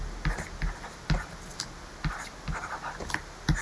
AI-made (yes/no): no